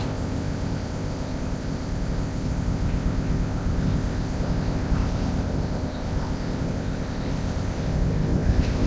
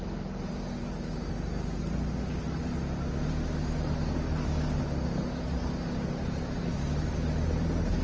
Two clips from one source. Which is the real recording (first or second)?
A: second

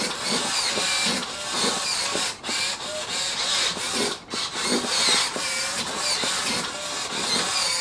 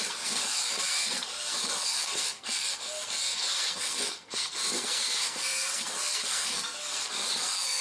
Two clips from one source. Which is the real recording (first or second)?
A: first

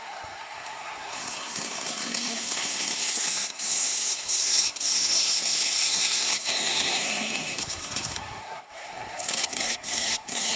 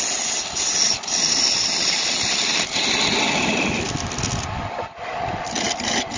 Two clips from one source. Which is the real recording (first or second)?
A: second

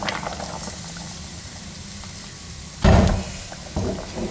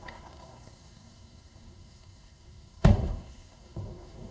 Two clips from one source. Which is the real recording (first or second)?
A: first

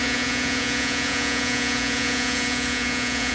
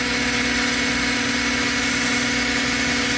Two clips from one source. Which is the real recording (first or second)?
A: second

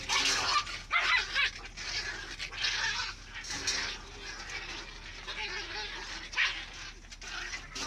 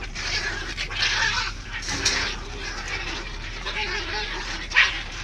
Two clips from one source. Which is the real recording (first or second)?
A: first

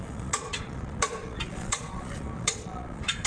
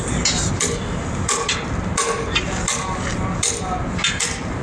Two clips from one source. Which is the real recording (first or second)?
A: second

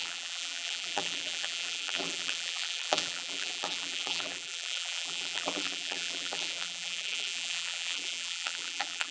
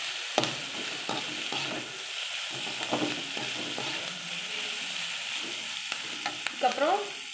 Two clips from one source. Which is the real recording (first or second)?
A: second